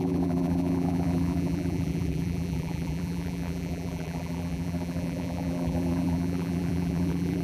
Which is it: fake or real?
fake